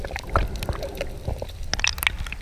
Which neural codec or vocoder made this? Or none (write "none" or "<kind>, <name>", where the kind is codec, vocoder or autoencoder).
none